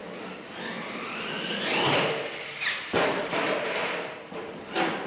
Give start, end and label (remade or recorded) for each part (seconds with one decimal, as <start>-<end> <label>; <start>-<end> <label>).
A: 0.0-5.1 recorded